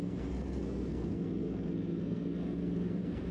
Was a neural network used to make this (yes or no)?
yes